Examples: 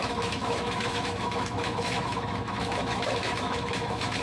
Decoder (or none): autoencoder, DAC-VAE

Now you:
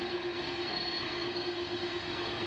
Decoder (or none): codec, SNAC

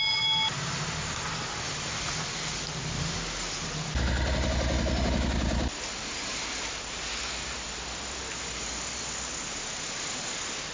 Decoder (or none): none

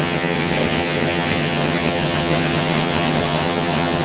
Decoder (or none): vocoder, HiFi-GAN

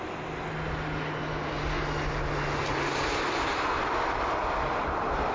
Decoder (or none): none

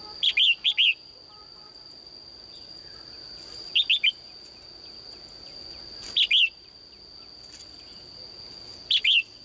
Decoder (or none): none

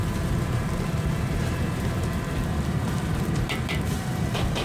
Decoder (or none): vocoder, BigVGAN v2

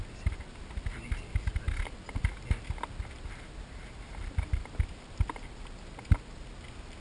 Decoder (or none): none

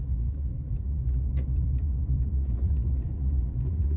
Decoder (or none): vocoder, Vocos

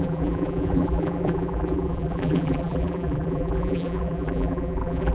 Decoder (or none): vocoder, BigVGAN v2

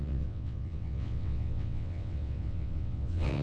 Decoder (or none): vocoder, WaveNeXt